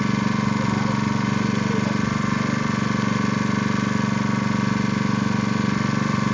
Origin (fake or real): real